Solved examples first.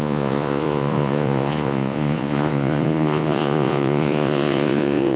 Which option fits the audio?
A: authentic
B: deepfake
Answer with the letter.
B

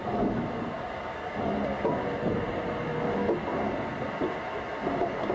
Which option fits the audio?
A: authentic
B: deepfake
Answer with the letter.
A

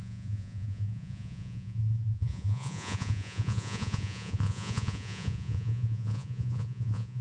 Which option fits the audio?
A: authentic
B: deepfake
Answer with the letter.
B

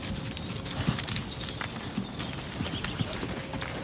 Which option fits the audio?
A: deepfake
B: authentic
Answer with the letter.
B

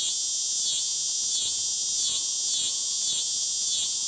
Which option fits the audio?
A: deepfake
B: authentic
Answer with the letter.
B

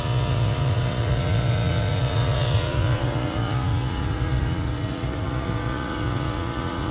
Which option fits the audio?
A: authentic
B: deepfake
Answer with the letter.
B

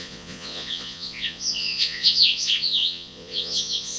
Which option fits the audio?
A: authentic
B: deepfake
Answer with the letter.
B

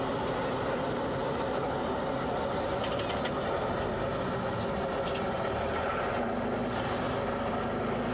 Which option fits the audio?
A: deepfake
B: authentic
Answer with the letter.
B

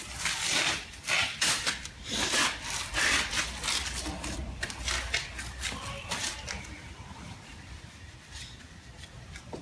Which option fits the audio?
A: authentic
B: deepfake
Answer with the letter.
A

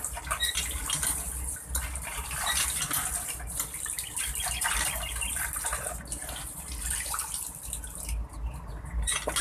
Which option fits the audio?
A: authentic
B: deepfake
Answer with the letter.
A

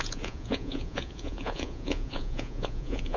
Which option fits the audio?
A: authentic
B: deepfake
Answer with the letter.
B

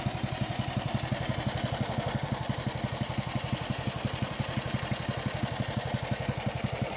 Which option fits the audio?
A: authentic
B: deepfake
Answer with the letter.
A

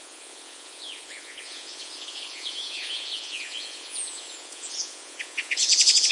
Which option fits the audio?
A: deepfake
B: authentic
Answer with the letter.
A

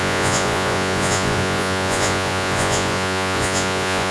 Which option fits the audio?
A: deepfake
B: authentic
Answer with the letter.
A